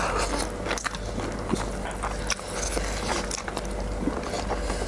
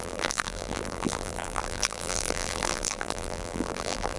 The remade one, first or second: second